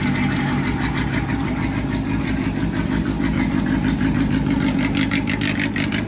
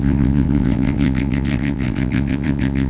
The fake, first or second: second